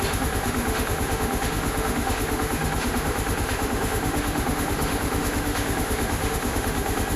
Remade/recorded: remade